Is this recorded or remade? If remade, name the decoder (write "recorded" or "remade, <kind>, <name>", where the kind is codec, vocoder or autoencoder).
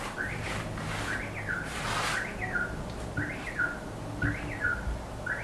recorded